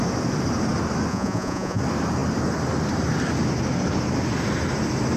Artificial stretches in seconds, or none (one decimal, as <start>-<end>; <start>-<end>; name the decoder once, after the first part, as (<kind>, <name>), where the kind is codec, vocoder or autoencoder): 1.1-1.8 (vocoder, Vocos)